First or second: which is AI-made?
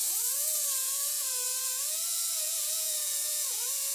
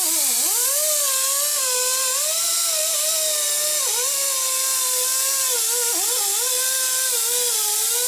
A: first